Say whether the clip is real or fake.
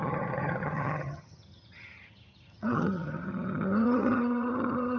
fake